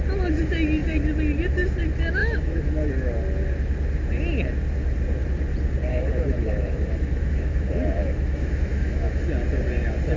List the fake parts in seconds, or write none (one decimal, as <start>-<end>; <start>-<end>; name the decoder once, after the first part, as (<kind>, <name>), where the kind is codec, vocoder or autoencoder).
2.2-2.9 (autoencoder, DAC-VAE); 5.9-9.2